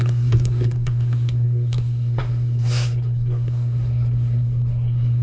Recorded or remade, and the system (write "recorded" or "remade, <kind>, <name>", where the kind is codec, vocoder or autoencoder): remade, codec, SNAC